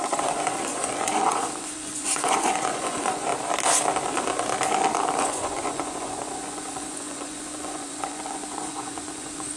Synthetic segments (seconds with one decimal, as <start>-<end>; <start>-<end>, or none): 0.0-3.3; 5.2-9.6